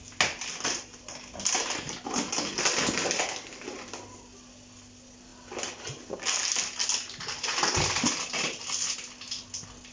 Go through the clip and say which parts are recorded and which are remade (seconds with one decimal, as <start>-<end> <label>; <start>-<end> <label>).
0.0-9.9 recorded